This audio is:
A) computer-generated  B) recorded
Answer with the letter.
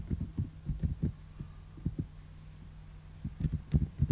B